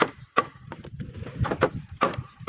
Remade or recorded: recorded